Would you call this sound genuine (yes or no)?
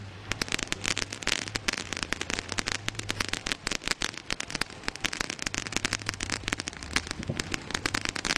yes